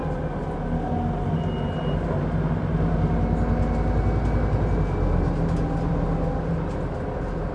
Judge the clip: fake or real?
real